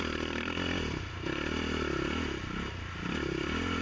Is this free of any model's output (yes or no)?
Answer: yes